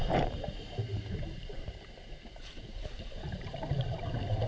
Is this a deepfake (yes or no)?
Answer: yes